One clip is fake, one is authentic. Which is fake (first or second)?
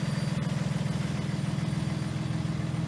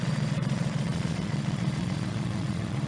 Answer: second